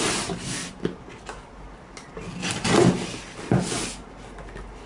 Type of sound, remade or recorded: recorded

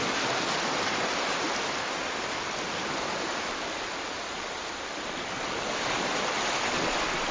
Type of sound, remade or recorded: recorded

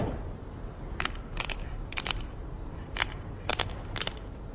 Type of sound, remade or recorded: remade